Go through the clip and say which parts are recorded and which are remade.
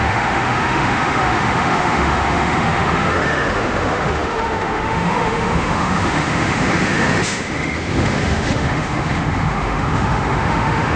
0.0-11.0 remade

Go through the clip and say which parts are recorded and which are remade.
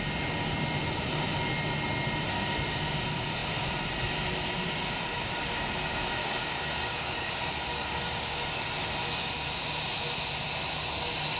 0.0-6.2 recorded; 6.2-7.3 remade; 7.3-7.7 recorded; 7.7-8.6 remade; 8.6-11.4 recorded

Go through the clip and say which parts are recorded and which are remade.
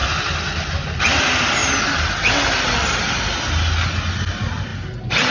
0.0-5.3 recorded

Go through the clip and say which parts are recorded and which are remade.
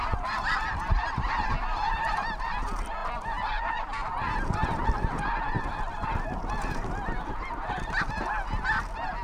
0.0-9.2 recorded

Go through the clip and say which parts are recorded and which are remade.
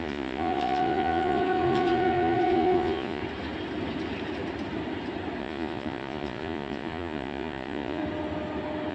0.0-3.2 remade; 3.2-5.4 recorded; 5.4-8.0 remade; 8.0-8.9 recorded